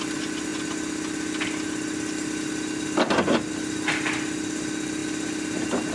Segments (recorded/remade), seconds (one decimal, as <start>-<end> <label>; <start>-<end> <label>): 0.0-5.9 recorded